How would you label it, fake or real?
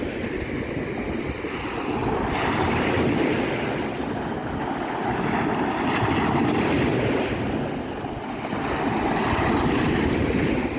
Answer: real